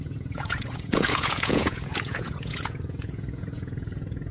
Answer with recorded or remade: remade